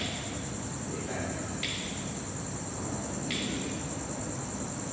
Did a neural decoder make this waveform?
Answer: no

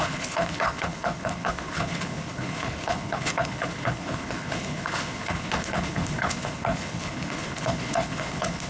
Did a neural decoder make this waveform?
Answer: yes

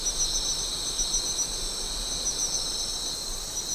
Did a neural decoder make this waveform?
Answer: no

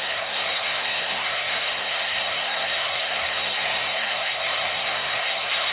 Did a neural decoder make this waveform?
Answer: yes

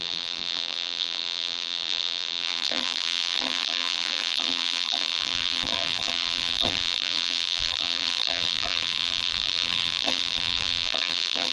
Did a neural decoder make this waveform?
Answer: yes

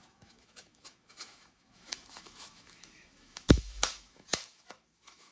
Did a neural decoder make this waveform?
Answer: yes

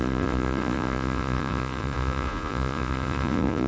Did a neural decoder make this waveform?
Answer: yes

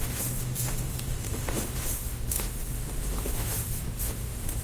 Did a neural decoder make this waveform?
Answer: yes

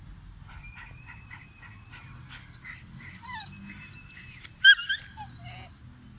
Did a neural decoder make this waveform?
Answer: no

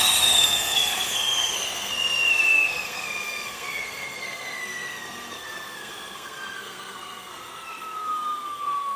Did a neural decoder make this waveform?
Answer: yes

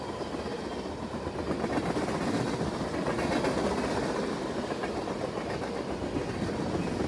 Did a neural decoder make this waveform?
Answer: no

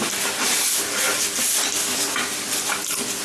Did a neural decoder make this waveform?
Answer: no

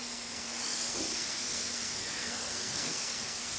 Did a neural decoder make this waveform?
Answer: yes